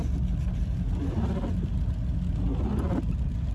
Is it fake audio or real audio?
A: real